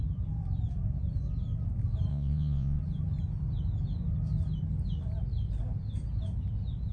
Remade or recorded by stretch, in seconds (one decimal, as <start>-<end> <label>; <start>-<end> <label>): 0.0-2.1 recorded; 2.1-2.8 remade; 2.8-6.9 recorded